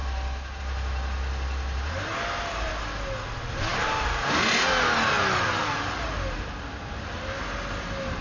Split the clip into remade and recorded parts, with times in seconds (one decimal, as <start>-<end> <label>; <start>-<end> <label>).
0.0-8.2 recorded